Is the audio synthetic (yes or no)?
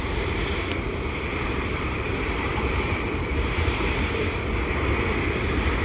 yes